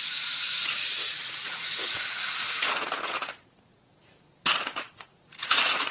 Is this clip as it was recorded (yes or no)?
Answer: no